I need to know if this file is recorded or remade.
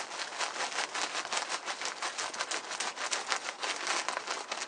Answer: recorded